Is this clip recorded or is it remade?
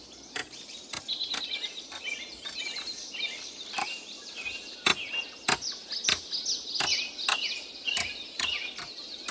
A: recorded